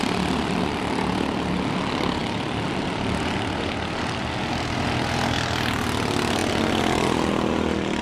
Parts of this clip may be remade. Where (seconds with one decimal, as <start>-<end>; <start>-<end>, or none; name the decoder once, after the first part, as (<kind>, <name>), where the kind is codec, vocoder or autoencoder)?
none